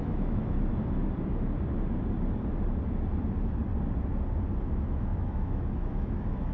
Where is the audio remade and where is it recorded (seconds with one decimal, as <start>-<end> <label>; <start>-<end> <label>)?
0.0-0.7 remade; 0.7-4.6 recorded; 4.6-6.5 remade